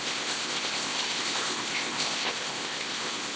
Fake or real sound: fake